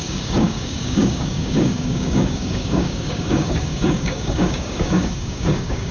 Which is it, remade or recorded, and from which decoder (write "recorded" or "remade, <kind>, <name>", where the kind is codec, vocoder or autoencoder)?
remade, codec, DAC